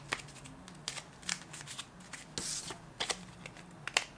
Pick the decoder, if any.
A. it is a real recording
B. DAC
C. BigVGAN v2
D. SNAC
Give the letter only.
A